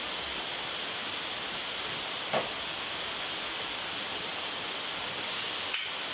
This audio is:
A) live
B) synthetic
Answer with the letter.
A